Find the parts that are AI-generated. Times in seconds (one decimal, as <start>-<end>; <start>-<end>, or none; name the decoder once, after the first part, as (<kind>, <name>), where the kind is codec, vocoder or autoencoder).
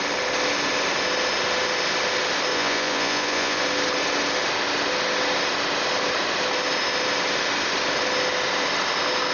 2.5-3.6 (vocoder, Vocos)